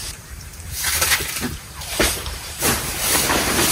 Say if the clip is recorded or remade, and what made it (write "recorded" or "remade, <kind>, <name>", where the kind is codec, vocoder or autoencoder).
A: remade, vocoder, BigVGAN v2